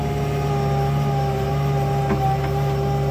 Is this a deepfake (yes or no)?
no